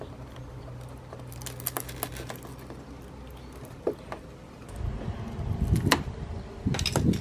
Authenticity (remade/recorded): recorded